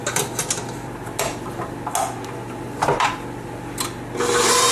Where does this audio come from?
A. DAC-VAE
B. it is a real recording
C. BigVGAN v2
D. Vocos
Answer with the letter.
B